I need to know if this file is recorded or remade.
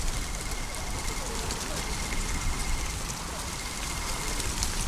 recorded